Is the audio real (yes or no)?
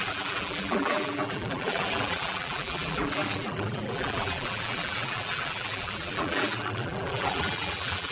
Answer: no